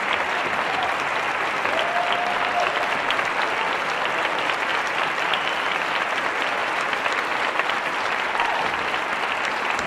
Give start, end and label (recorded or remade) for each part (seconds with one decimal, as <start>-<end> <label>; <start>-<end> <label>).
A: 0.0-4.7 recorded; 4.7-6.1 remade; 6.1-6.6 recorded; 6.6-9.3 remade; 9.3-9.9 recorded